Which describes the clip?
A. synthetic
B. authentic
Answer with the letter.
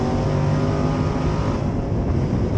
B